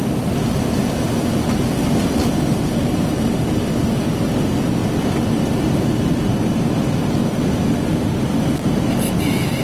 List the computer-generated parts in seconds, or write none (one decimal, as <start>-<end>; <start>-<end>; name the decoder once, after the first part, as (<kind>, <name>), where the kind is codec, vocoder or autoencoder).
none